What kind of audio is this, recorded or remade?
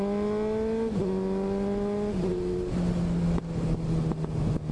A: recorded